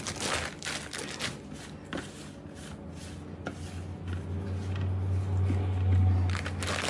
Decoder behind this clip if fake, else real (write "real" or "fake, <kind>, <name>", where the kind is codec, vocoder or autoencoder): real